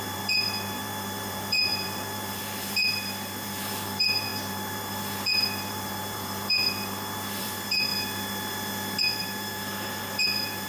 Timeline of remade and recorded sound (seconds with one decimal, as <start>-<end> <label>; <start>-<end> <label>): 0.0-7.9 remade; 7.9-9.0 recorded; 9.0-10.7 remade